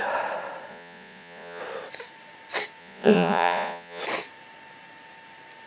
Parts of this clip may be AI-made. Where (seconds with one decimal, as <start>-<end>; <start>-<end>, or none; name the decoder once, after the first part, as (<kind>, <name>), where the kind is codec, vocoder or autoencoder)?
0.7-1.6 (vocoder, Vocos); 2.8-4.0